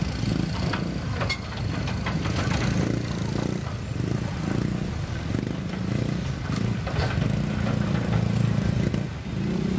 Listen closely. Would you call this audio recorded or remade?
recorded